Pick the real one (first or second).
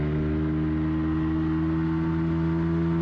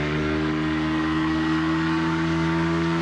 first